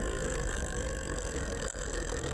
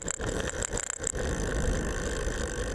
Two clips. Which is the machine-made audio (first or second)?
first